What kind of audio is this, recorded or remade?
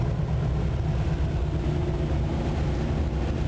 recorded